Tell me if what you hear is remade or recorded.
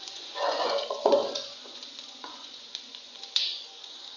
remade